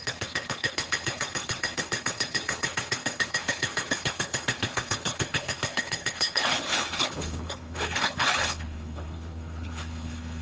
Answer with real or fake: fake